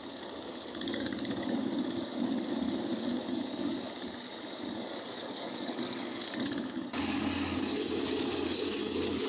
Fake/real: fake